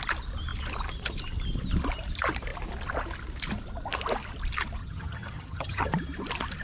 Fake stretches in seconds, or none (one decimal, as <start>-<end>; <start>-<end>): 4.8-5.9